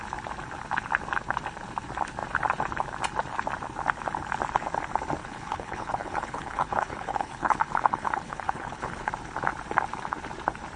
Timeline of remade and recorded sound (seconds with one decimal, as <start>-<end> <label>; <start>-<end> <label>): 0.0-5.2 recorded; 5.2-9.1 remade; 9.1-10.8 recorded